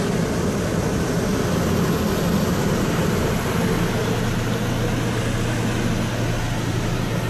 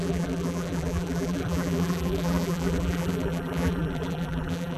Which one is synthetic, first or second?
second